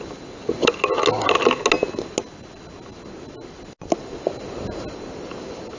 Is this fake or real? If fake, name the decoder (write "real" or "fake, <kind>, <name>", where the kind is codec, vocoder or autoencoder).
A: real